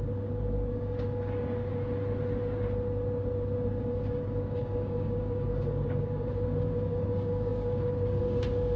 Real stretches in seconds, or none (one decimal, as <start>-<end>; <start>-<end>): 1.7-3.8